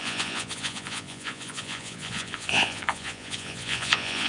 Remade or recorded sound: remade